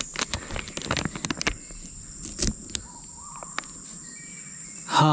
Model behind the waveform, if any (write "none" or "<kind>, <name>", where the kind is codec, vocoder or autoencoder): none